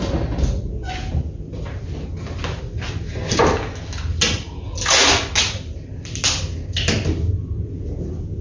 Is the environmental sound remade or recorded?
recorded